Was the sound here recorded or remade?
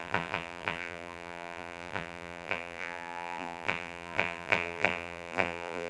remade